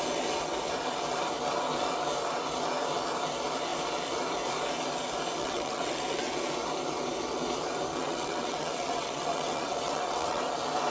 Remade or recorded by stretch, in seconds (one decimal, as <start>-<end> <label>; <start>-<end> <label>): 0.0-5.4 recorded; 5.4-6.3 remade; 6.3-8.0 recorded; 8.0-10.4 remade; 10.4-10.9 recorded